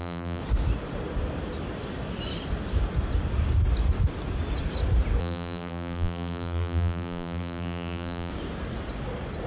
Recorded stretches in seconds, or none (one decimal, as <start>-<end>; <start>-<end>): 0.4-5.2; 8.3-9.5